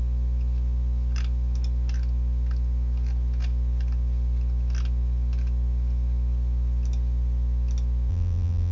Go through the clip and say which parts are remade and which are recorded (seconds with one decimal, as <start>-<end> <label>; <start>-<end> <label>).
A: 0.0-8.1 recorded; 8.1-8.7 remade